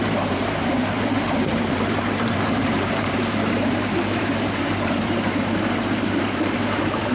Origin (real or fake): fake